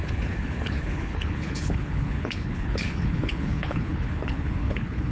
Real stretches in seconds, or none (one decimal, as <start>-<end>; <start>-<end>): none